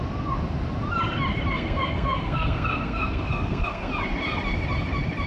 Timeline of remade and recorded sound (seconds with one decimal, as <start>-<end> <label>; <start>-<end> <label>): 0.0-1.5 recorded; 1.5-3.9 remade; 3.9-5.3 recorded

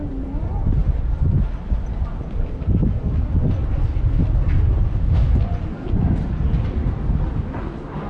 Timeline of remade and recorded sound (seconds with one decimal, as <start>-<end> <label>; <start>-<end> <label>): 0.0-8.1 recorded

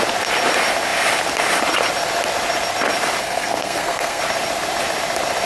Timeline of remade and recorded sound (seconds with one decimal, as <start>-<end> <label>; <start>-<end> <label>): 0.0-3.2 recorded; 3.2-4.2 remade; 4.2-5.5 recorded

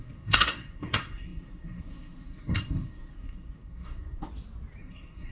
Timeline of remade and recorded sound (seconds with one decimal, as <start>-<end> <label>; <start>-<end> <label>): 0.0-4.2 remade; 4.2-4.8 recorded; 4.8-5.3 remade

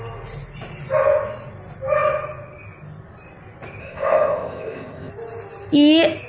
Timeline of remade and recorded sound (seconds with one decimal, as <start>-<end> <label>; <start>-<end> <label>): 0.0-3.8 recorded; 3.8-5.1 remade; 5.1-6.3 recorded

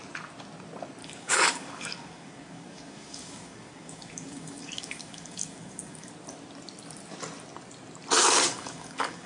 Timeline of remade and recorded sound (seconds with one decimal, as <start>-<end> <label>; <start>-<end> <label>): 0.0-1.0 recorded; 1.0-6.1 remade; 6.1-8.2 recorded; 8.2-9.3 remade

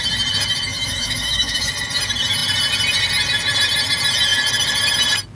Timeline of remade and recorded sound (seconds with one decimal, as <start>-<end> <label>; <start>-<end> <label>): 0.0-0.7 recorded; 0.7-1.7 remade; 1.7-5.3 recorded

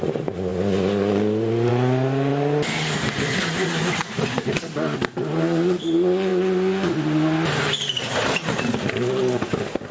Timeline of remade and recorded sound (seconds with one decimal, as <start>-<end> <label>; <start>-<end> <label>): 0.0-9.9 recorded